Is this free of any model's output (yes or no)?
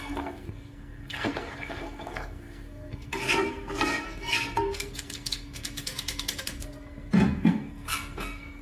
no